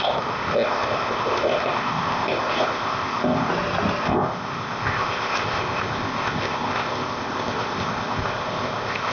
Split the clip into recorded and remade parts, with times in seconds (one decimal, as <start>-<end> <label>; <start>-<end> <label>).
0.0-3.5 remade; 3.5-4.0 recorded; 4.0-9.1 remade